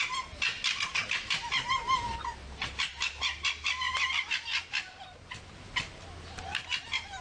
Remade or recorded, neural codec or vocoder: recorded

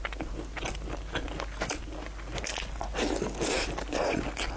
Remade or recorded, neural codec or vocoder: recorded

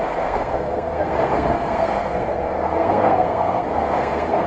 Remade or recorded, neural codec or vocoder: remade, codec, SNAC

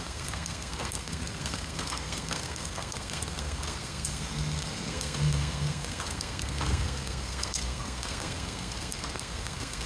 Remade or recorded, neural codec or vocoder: remade, codec, SNAC